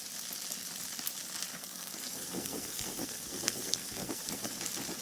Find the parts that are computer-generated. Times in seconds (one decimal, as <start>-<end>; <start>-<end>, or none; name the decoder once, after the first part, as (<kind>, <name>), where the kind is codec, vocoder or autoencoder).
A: 1.5-4.5 (codec, SNAC)